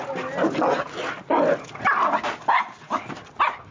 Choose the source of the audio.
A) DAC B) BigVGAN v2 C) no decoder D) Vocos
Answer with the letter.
C